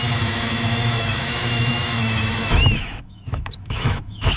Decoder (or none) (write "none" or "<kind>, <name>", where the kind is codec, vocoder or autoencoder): autoencoder, DAC-VAE